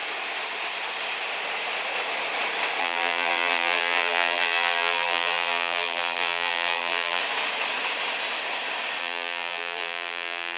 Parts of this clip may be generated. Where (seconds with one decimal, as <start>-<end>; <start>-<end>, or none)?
2.8-7.2; 9.0-10.6